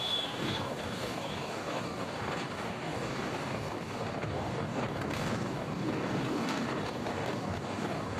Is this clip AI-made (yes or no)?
yes